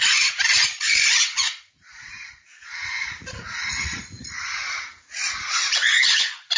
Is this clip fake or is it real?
fake